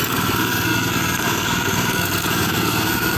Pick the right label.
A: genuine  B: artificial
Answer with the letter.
B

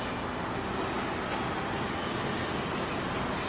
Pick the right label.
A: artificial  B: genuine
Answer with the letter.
B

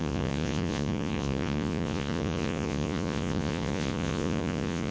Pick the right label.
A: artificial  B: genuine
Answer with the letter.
A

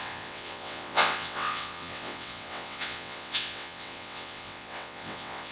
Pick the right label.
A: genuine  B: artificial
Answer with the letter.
B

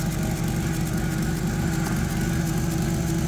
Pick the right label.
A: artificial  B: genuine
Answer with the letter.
B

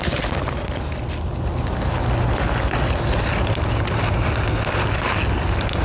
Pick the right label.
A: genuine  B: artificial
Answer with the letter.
A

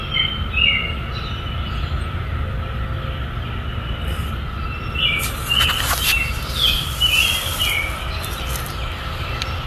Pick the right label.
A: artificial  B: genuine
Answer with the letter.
B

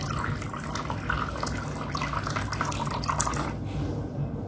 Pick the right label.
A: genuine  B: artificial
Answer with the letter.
A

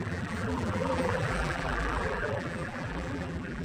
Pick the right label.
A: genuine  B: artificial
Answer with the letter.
B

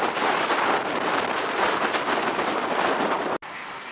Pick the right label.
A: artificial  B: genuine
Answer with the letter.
B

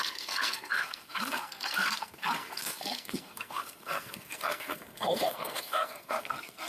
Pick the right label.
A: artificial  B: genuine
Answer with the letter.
A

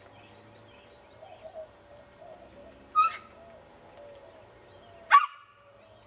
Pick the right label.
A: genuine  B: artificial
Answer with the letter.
A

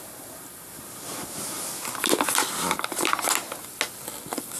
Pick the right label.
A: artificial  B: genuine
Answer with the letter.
B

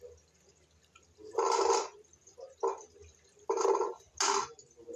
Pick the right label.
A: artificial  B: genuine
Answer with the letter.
B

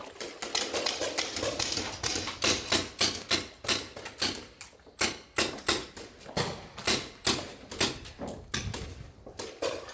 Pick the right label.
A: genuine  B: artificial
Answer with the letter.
A